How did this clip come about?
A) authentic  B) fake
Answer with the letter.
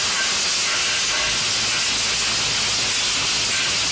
A